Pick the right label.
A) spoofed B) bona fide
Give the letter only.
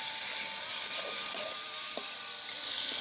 B